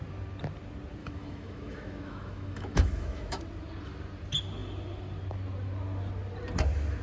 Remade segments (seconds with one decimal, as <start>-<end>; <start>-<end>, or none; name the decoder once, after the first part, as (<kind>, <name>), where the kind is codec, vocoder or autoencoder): 1.0-3.4 (autoencoder, DAC-VAE)